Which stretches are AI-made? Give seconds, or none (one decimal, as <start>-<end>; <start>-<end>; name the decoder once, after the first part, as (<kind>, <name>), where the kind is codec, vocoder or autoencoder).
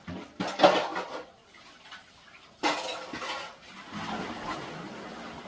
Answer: none